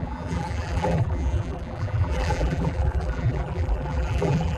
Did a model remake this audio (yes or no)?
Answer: yes